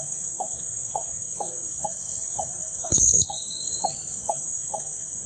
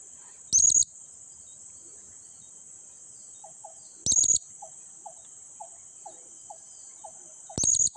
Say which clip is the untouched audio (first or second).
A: second